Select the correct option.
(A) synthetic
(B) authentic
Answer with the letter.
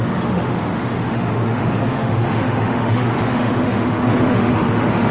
A